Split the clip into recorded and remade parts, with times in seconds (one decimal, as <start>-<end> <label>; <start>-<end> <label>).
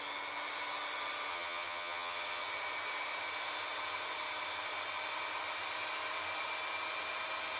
0.0-1.3 recorded; 1.3-2.4 remade; 2.4-7.6 recorded